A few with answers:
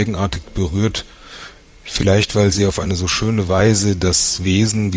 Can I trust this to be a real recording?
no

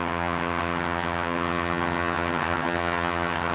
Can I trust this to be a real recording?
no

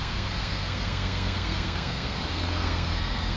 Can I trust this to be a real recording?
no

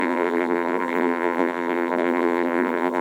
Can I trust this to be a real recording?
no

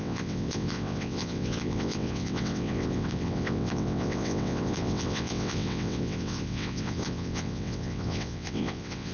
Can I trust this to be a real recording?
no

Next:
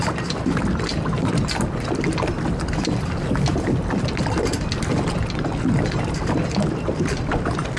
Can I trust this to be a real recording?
yes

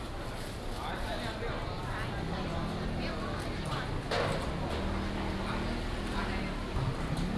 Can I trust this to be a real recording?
yes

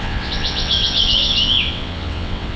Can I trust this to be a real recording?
no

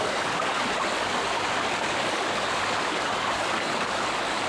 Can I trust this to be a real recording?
no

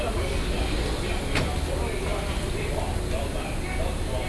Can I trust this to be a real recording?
yes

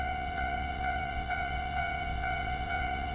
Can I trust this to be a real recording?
no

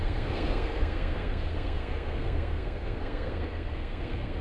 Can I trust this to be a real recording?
no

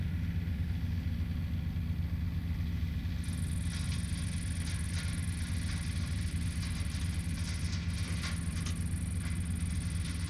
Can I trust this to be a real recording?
yes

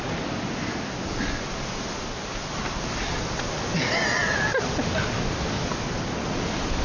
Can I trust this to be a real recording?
yes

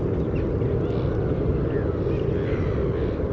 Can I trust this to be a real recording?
yes